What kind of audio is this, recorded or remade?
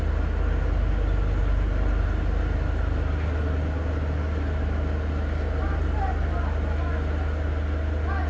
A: recorded